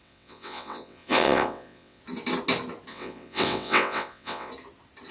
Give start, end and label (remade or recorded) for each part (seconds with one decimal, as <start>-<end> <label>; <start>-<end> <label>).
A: 0.0-2.0 remade; 2.0-2.9 recorded; 2.9-4.5 remade; 4.5-5.1 recorded